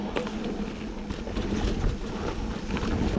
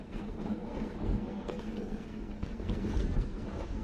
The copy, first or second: second